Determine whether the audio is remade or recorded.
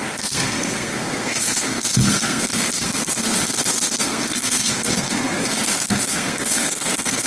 remade